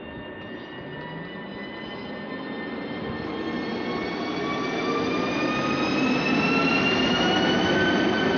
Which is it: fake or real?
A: real